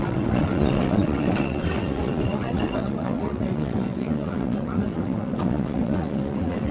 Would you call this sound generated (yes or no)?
yes